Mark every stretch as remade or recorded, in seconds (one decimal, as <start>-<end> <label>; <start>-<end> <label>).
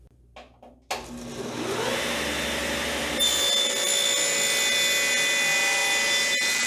0.0-6.7 recorded